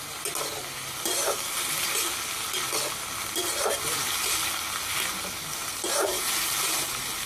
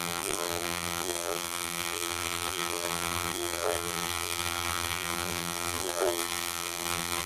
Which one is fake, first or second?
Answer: second